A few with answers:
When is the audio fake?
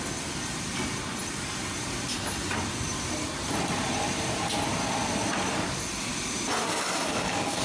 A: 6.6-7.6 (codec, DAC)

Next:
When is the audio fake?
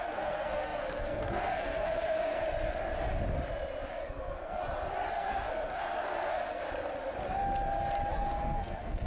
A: 0.0-2.4 (codec, SNAC); 3.9-4.6; 5.1-6.6; 8.1-9.1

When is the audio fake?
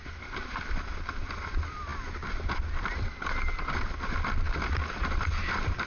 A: none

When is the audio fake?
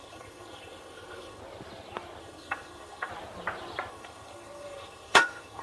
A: 0.0-1.4 (codec, SNAC); 2.2-3.1; 3.9-5.6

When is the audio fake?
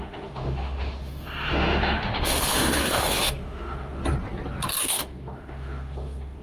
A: 0.0-4.0 (autoencoder, DAC-VAE); 4.8-6.4